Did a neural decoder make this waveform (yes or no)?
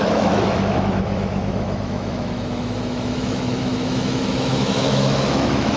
yes